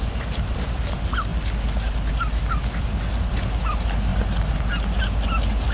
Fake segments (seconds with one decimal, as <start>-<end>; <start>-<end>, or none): none